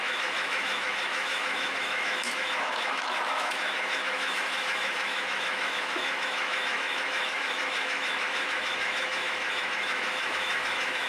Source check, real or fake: fake